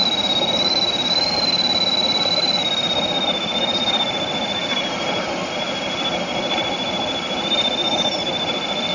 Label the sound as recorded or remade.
recorded